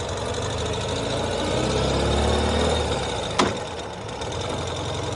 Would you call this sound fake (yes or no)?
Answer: no